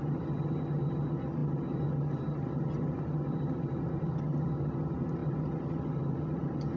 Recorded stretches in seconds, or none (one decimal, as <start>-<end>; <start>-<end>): 0.0-6.8